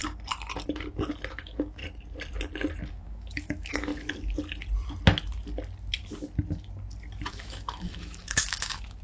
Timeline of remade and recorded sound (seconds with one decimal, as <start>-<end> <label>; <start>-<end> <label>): 0.0-1.3 recorded; 1.3-1.8 remade; 1.8-2.9 recorded; 2.9-3.9 remade; 3.9-7.3 recorded; 7.3-9.0 remade